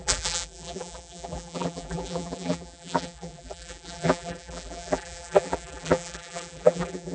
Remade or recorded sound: remade